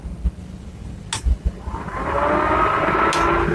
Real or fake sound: real